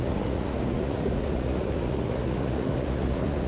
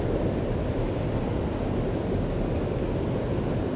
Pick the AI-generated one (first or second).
first